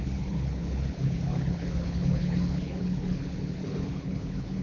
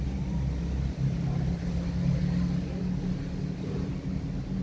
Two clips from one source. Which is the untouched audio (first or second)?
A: second